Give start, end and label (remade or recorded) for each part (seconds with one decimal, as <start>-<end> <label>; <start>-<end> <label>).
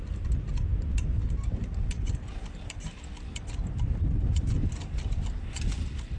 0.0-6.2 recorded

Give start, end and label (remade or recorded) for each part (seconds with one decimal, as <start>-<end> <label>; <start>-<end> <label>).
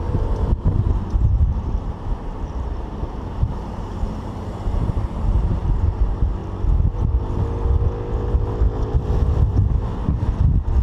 0.0-6.4 remade; 6.4-10.8 recorded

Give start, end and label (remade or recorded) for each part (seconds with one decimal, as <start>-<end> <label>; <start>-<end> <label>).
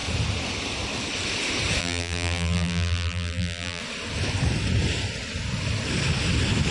0.0-1.8 recorded; 1.8-3.8 remade; 3.8-6.7 recorded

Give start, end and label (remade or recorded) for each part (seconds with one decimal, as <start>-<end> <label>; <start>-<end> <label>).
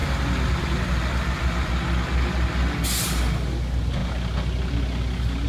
0.0-1.7 remade; 1.7-5.5 recorded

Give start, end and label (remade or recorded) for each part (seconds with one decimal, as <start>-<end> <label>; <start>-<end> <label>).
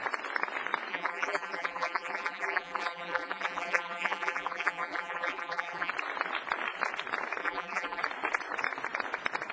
0.0-0.9 recorded; 0.9-5.9 remade; 5.9-7.4 recorded; 7.4-8.0 remade; 8.0-9.5 recorded